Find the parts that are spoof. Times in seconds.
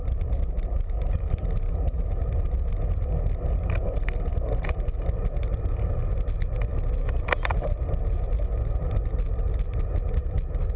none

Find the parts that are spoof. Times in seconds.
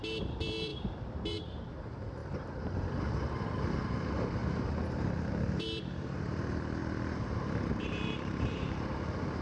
0.0-2.2 (vocoder, BigVGAN v2); 3.0-4.4; 5.3-6.8; 7.8-9.4